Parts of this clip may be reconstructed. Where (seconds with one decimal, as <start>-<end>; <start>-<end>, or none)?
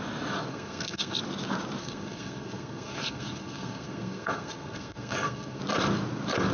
0.5-1.2; 1.8-5.6